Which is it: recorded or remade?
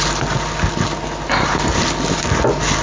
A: recorded